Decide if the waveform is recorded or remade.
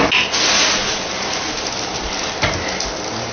recorded